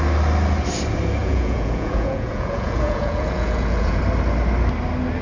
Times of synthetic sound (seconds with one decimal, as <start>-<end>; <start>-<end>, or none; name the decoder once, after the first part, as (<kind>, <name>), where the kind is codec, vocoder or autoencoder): 1.2-4.0 (vocoder, Vocos)